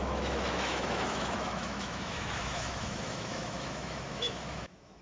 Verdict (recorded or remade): remade